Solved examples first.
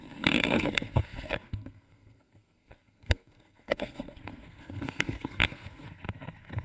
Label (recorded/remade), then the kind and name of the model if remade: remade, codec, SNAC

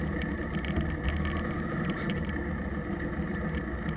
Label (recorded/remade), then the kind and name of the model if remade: recorded